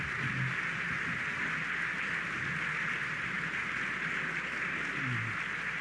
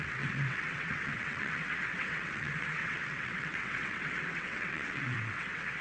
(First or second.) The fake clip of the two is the second